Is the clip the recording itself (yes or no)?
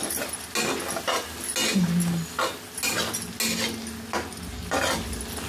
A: yes